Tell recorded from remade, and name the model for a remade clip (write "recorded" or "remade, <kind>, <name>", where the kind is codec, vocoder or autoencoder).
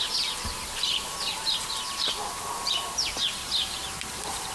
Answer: remade, vocoder, BigVGAN v2